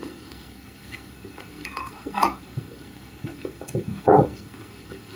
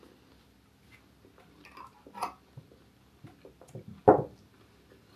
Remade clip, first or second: first